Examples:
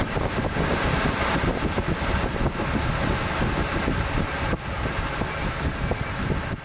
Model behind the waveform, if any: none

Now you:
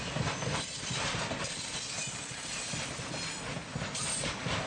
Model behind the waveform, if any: none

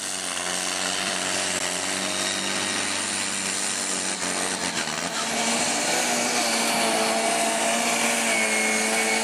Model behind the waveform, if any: none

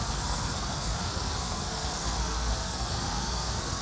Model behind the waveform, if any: codec, SNAC